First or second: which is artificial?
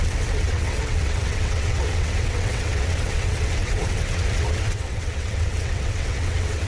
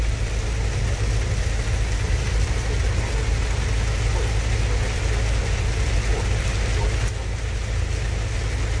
first